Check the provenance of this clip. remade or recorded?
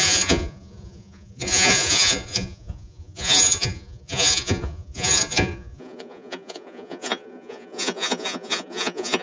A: remade